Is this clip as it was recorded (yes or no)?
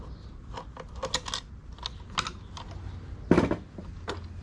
yes